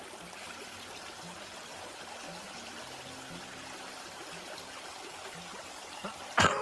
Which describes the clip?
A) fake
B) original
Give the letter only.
B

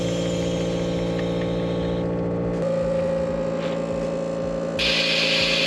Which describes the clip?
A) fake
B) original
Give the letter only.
B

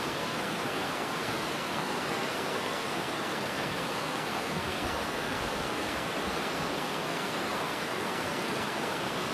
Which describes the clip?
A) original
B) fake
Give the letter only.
B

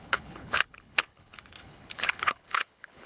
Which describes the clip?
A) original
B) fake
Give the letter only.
B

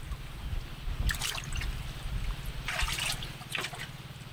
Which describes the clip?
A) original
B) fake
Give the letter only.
A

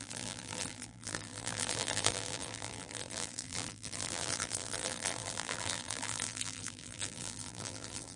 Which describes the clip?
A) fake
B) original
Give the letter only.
A